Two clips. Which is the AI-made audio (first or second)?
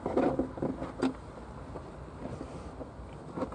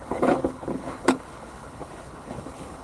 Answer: second